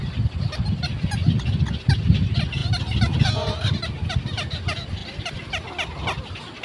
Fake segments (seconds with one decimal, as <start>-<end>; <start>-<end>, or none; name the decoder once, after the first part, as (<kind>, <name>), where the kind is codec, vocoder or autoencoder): 5.0-5.7 (vocoder, BigVGAN v2)